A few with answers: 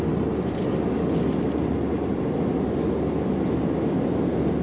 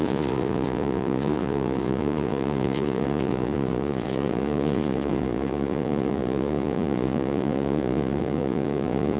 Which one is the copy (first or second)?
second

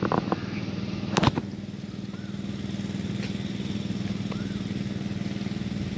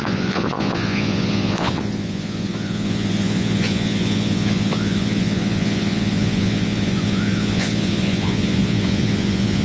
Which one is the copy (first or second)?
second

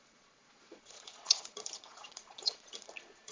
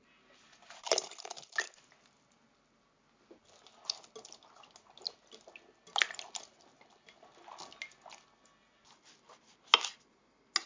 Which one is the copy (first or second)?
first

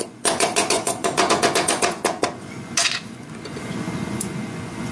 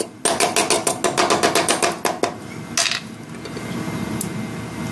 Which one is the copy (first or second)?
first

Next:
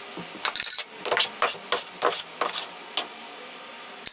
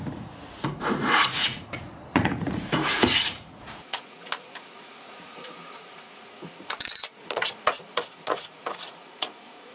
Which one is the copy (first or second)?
second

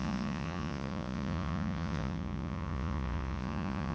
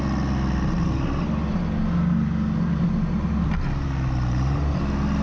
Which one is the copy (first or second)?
first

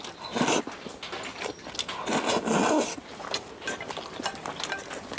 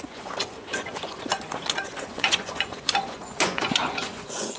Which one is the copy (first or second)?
second